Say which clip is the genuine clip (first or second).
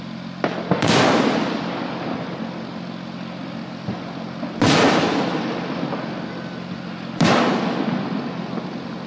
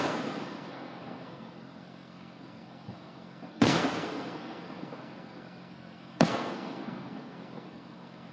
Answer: first